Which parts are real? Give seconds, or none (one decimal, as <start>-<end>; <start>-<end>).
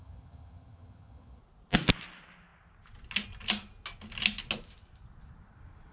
1.4-5.9